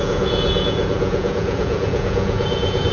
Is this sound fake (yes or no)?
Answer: yes